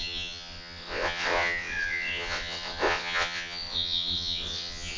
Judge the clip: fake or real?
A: fake